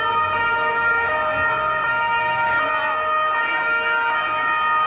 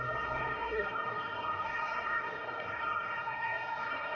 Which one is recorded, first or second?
first